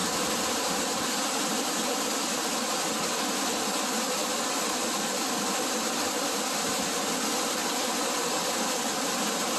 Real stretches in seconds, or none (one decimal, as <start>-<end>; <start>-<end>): 0.7-4.2; 7.0-9.6